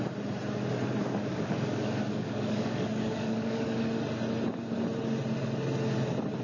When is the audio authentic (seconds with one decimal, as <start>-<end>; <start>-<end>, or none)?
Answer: 0.0-1.0; 3.9-6.4